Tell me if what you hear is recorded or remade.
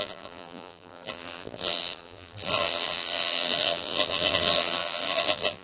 remade